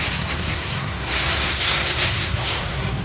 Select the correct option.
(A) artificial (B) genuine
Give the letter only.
A